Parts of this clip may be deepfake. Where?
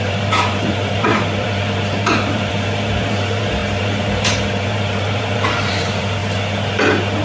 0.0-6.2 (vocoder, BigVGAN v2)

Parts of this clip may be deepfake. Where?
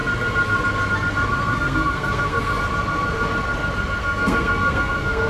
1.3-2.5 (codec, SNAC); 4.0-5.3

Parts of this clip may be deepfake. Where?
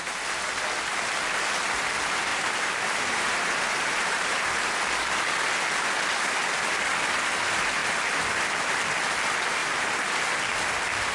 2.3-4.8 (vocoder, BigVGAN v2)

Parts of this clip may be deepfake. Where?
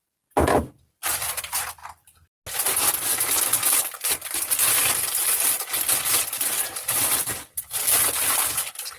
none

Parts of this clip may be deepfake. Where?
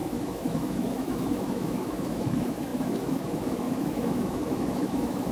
0.0-5.3 (autoencoder, DAC-VAE)